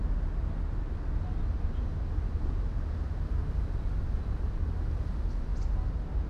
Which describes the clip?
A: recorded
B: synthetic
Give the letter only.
A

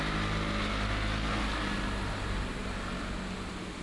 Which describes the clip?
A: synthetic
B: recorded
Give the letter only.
B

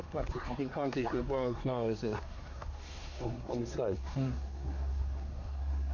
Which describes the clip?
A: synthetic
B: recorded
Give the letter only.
A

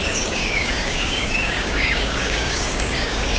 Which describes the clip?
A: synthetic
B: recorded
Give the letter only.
A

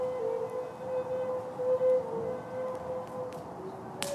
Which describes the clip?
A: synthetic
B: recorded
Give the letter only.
B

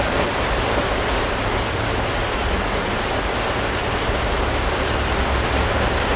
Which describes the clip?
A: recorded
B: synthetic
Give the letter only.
A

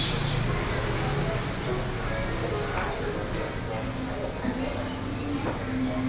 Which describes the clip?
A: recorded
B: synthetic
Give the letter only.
A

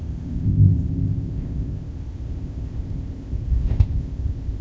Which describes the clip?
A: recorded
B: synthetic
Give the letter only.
B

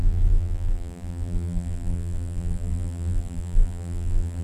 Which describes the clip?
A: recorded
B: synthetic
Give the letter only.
B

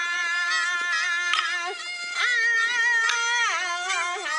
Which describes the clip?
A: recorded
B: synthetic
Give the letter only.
A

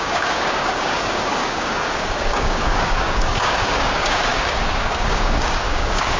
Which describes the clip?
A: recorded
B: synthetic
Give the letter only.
B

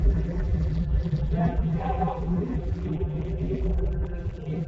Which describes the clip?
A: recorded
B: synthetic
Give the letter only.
B